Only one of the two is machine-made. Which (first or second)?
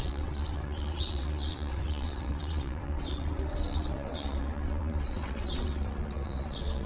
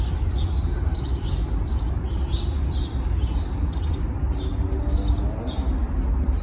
first